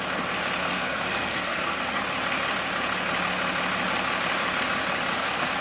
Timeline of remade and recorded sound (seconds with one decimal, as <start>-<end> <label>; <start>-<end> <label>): 0.0-0.6 recorded; 0.6-2.0 remade; 2.0-5.1 recorded; 5.1-5.6 remade